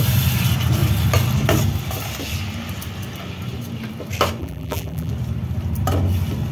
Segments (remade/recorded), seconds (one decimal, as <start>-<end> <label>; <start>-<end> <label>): 0.0-4.4 recorded; 4.4-5.1 remade; 5.1-6.5 recorded